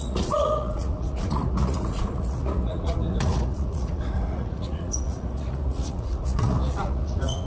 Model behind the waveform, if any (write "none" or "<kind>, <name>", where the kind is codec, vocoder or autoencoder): vocoder, Vocos